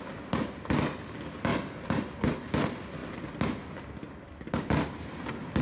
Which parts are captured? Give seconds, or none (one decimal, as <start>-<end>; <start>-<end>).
0.0-5.6

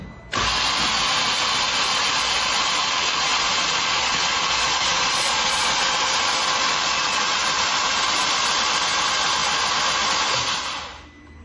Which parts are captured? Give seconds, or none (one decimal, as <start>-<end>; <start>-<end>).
0.0-2.8; 5.8-6.7; 7.4-11.4

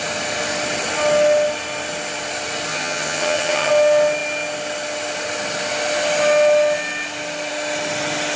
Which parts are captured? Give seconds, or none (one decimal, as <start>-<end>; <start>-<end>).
0.0-2.7; 3.7-8.4

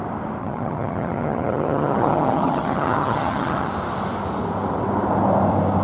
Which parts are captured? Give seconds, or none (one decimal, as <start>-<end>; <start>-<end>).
0.0-0.4; 3.7-5.8

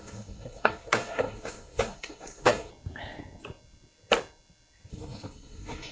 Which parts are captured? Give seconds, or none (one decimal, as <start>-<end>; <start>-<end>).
2.7-4.9

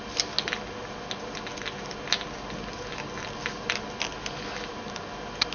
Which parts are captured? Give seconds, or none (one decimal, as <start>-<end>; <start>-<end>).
0.0-5.5

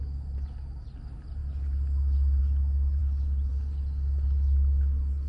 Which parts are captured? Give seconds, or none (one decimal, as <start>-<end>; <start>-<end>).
0.0-5.3

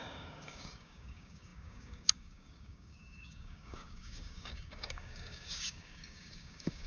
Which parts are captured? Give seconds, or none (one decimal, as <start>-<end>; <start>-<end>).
none